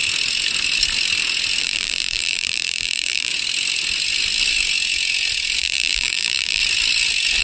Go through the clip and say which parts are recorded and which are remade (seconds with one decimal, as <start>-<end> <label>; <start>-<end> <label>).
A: 0.0-1.6 recorded; 1.6-3.3 remade; 3.3-5.6 recorded; 5.6-6.6 remade; 6.6-7.4 recorded